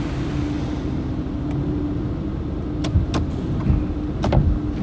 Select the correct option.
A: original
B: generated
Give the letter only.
A